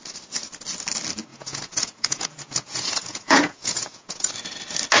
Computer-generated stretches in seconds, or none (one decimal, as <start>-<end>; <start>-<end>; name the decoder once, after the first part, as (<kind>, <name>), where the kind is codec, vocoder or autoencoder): 1.3-4.3 (vocoder, Vocos)